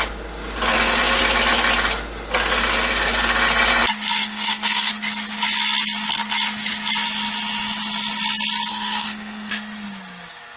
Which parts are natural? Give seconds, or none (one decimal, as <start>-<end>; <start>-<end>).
0.0-4.2; 4.9-8.7; 9.5-10.6